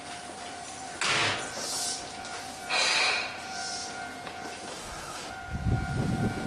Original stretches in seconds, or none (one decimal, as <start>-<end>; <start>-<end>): 0.0-4.7; 5.3-6.5